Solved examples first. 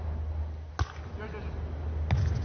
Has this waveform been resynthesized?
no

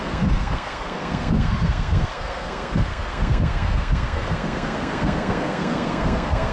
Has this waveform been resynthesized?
yes